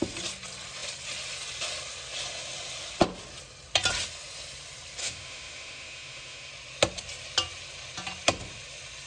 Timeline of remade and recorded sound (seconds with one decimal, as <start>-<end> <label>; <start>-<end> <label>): 0.0-5.0 recorded; 5.0-6.5 remade; 6.5-9.1 recorded